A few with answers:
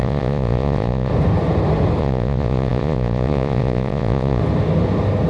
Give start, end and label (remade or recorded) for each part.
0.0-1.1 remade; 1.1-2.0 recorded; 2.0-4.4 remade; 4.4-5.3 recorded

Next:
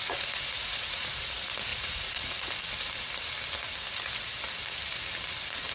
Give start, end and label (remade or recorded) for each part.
0.0-1.2 remade; 1.2-1.7 recorded; 1.7-2.4 remade; 2.4-5.7 recorded

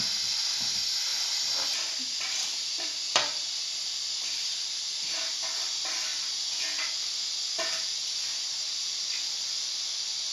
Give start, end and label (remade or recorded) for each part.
0.0-10.3 recorded

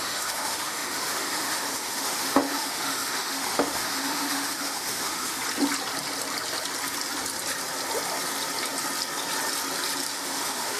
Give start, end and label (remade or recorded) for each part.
0.0-5.4 remade; 5.4-10.1 recorded; 10.1-10.8 remade

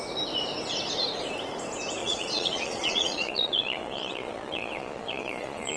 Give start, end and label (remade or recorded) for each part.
0.0-2.0 recorded; 2.0-5.8 remade

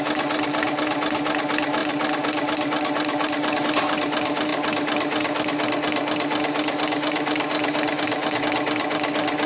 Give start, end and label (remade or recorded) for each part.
0.0-9.5 recorded

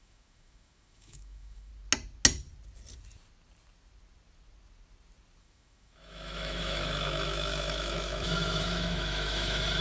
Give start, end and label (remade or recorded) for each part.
0.0-1.7 remade; 1.7-5.4 recorded; 5.4-9.8 remade